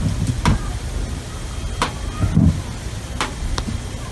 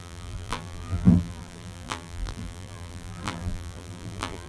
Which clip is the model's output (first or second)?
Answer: second